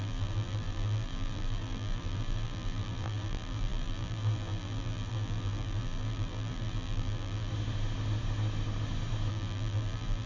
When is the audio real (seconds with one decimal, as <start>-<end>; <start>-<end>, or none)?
7.5-9.3